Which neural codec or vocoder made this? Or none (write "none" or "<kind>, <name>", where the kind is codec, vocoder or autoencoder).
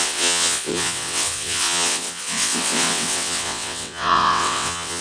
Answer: vocoder, WaveNeXt